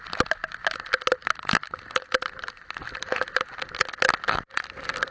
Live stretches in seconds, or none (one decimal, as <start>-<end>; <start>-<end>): 0.0-5.1